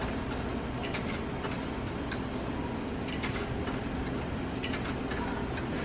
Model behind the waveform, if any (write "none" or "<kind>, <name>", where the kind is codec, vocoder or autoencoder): none